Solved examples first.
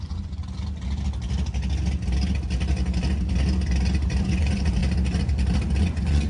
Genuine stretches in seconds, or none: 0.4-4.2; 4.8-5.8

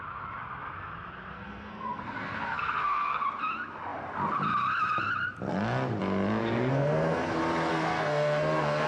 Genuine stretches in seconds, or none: 0.0-1.3; 3.2-6.4; 7.3-7.7

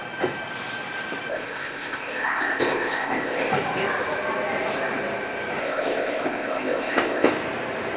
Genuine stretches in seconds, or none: 0.0-1.3; 3.5-5.6; 7.3-8.0

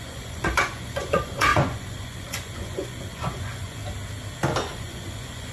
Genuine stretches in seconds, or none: 3.8-4.6

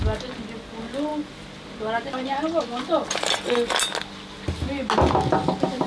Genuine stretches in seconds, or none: 0.0-5.9